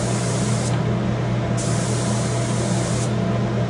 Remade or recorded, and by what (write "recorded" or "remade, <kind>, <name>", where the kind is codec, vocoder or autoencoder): recorded